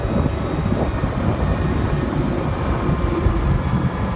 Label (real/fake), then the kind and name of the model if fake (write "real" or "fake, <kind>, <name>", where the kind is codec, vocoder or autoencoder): real